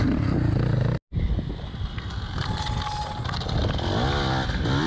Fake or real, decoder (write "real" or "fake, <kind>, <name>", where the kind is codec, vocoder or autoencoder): real